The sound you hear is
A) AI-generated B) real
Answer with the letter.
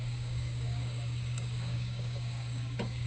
A